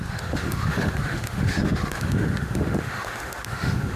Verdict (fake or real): fake